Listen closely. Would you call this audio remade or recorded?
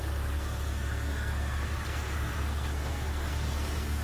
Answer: remade